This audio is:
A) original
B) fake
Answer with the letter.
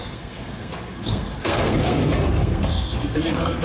B